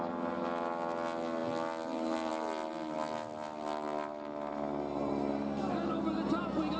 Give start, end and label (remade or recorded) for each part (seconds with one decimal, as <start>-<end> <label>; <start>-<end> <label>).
0.0-6.8 recorded